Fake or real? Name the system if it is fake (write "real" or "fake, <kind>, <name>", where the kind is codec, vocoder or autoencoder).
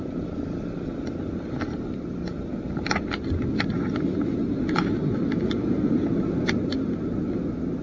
real